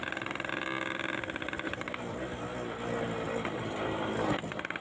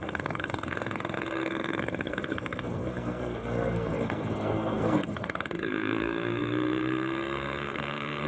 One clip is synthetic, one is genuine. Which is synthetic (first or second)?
second